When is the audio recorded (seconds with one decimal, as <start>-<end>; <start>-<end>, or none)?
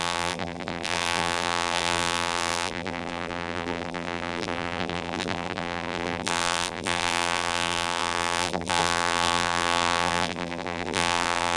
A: none